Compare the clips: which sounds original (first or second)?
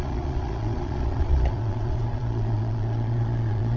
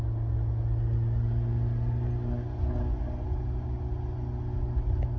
second